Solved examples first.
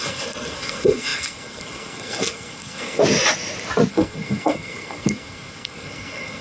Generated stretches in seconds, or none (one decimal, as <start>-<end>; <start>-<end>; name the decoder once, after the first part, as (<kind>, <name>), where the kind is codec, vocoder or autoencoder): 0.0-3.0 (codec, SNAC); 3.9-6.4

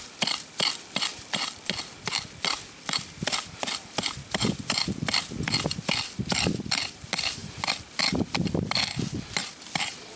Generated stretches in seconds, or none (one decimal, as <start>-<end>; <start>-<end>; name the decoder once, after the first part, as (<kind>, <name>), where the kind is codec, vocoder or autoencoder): none

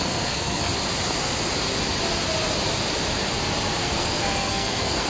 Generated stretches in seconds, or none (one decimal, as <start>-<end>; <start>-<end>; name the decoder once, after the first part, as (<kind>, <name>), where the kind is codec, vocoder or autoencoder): 0.0-0.7 (codec, SNAC); 3.8-5.1

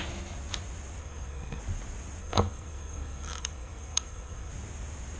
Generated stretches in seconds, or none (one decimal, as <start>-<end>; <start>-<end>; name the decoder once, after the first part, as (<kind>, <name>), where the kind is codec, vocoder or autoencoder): 1.0-1.6 (codec, SNAC); 2.2-4.5

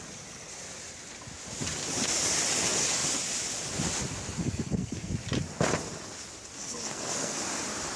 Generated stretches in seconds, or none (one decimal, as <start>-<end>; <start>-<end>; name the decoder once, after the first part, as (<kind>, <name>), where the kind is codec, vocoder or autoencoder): 4.4-5.1 (codec, SNAC); 6.6-7.4

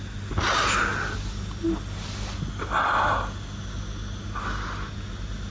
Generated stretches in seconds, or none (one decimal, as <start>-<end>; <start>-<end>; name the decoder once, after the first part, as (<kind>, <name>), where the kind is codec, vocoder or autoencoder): none